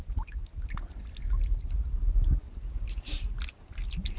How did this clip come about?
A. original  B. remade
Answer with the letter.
A